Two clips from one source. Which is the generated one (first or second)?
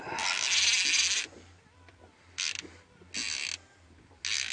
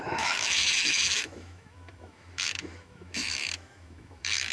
second